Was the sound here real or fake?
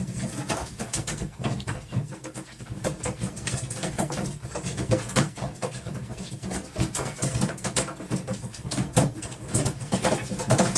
fake